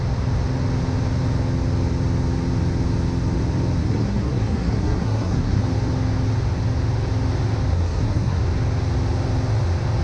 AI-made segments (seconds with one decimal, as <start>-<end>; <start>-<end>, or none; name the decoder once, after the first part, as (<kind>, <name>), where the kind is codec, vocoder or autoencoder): 3.8-5.6 (codec, SNAC); 7.7-8.4